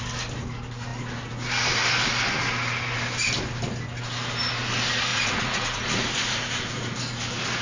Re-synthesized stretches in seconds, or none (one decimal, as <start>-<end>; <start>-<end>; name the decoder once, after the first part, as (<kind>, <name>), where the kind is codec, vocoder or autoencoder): 5.1-5.8 (vocoder, Vocos)